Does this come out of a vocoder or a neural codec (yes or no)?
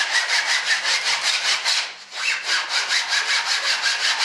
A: no